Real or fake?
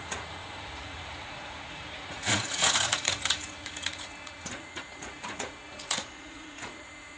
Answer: fake